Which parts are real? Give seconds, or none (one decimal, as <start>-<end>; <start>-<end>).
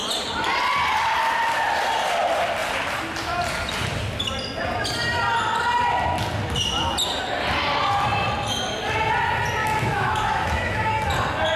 0.0-9.6; 10.9-11.6